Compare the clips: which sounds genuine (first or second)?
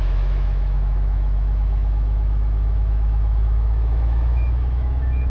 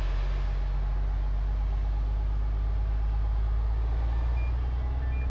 second